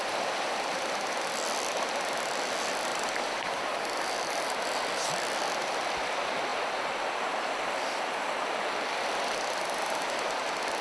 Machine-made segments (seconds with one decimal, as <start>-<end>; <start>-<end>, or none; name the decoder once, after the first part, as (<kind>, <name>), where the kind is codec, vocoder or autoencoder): 0.0-6.5 (vocoder, BigVGAN v2); 10.4-10.8